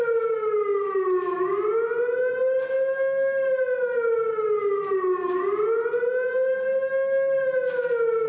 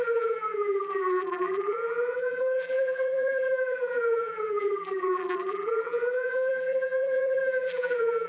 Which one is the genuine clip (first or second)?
first